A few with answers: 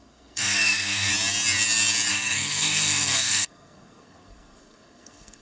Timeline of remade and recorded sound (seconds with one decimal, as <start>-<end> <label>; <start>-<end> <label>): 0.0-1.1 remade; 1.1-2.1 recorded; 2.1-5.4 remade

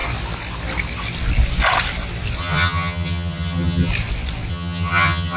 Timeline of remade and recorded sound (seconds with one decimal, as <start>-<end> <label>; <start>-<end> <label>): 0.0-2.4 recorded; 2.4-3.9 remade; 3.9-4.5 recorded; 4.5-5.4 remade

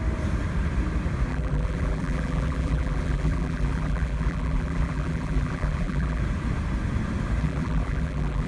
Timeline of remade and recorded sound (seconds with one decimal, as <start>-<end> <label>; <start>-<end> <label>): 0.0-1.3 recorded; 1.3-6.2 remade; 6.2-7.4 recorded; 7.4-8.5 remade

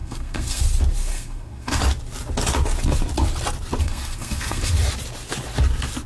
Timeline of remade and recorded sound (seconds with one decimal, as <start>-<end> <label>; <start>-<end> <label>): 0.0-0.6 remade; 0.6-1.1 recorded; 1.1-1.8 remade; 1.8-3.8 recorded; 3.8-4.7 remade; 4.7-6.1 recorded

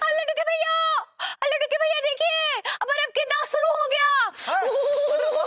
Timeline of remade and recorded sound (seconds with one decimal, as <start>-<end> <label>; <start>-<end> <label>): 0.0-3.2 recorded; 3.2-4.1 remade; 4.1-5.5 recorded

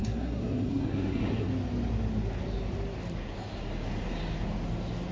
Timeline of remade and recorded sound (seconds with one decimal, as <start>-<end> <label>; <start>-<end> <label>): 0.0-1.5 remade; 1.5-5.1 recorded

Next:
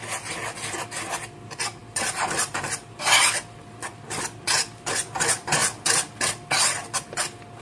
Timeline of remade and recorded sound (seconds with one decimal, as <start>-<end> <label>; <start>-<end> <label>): 0.0-1.8 recorded; 1.8-2.7 remade; 2.7-7.6 recorded